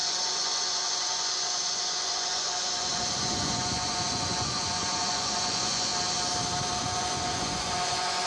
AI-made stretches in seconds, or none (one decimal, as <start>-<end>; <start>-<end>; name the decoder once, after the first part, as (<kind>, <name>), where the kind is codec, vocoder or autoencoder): 0.0-5.9 (vocoder, Vocos); 6.8-8.3